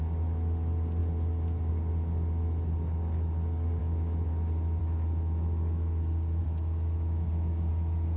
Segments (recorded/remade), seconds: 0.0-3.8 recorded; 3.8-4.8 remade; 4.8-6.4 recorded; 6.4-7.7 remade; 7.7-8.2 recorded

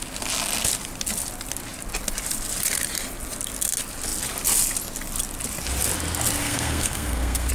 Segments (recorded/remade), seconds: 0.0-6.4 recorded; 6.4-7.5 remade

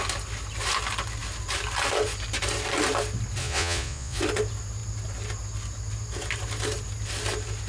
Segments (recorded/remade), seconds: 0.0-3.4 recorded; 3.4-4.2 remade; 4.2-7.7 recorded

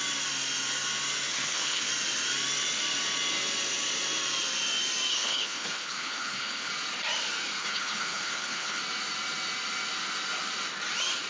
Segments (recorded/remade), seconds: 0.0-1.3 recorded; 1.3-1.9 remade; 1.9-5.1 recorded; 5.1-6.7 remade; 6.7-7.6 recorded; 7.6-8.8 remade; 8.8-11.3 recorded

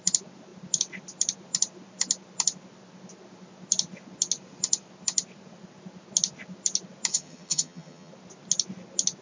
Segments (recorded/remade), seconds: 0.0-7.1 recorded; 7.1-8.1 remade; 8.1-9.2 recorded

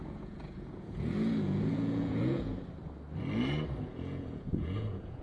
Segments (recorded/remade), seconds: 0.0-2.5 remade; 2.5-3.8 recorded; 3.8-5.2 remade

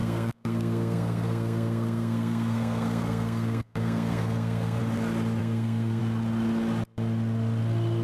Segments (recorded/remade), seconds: 0.0-4.8 remade; 4.8-5.4 recorded; 5.4-6.0 remade; 6.0-8.0 recorded

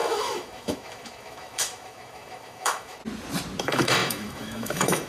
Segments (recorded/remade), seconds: 0.0-3.0 remade; 3.0-3.6 recorded; 3.6-5.1 remade